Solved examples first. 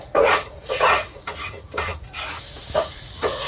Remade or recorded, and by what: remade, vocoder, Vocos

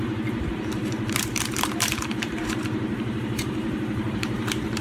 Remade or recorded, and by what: remade, vocoder, BigVGAN v2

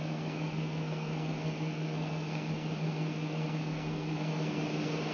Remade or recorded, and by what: remade, codec, SNAC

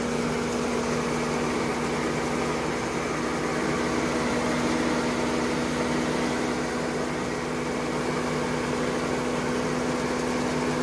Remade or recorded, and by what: recorded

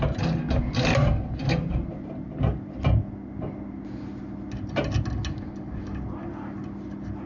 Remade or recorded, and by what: recorded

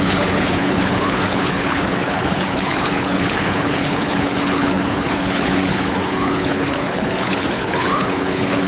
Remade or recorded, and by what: remade, codec, HILCodec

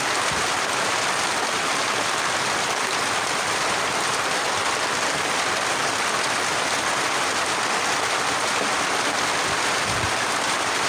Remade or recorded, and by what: recorded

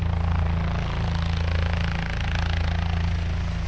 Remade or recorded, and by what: recorded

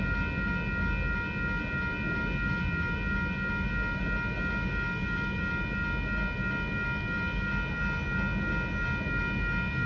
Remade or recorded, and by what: recorded